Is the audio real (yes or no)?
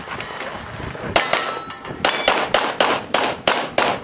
yes